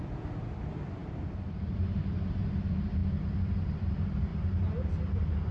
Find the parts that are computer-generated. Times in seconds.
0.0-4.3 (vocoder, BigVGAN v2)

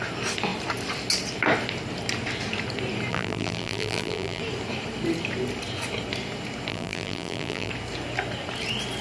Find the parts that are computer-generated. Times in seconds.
3.1-4.4 (vocoder, BigVGAN v2); 6.7-7.7